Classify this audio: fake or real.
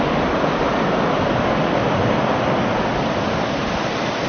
real